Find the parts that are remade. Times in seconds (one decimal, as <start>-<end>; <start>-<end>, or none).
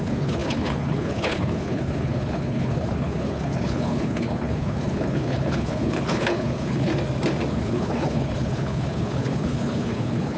0.0-6.9; 7.5-10.4